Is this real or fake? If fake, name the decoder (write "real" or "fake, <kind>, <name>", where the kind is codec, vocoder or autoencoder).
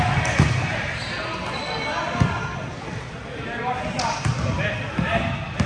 real